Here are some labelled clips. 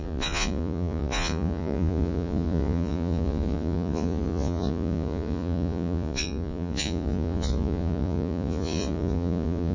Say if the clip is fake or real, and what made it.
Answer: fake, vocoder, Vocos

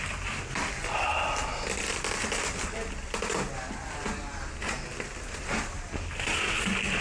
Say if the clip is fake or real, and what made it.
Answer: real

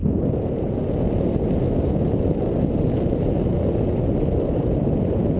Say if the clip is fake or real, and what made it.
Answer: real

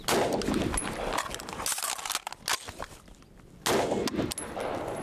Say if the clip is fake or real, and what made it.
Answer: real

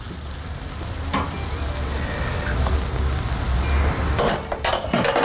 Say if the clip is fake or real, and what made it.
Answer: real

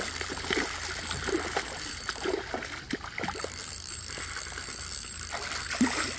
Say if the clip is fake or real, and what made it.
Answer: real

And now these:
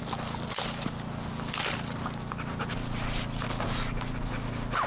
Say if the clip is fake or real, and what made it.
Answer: real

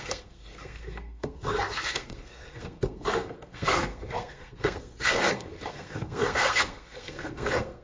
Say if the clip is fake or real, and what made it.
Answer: fake, codec, SNAC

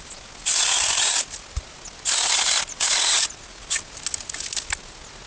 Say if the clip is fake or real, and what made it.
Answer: real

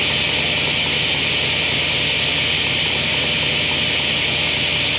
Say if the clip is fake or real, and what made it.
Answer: real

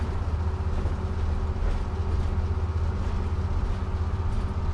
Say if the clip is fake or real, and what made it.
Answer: real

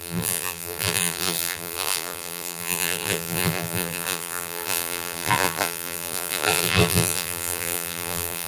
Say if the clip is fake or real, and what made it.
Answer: fake, vocoder, BigVGAN v2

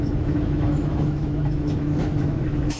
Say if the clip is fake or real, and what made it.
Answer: fake, autoencoder, DAC-VAE